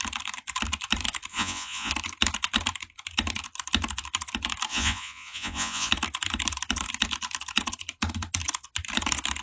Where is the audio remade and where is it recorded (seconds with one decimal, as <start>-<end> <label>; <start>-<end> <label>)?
0.0-1.3 recorded; 1.3-1.9 remade; 1.9-4.7 recorded; 4.7-5.9 remade; 5.9-9.4 recorded